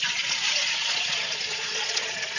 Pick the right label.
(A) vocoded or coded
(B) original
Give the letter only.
A